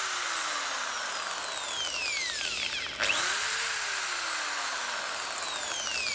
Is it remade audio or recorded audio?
recorded